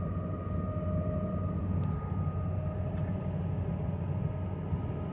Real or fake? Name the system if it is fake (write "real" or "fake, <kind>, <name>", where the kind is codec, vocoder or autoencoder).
real